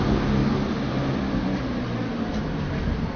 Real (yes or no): yes